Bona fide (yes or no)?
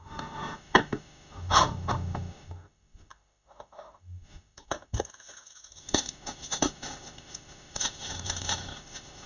no